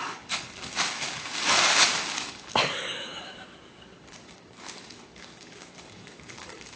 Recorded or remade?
remade